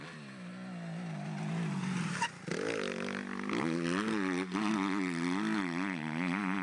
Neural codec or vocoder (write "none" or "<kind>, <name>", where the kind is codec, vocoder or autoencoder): none